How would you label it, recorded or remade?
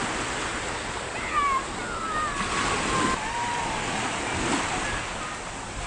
recorded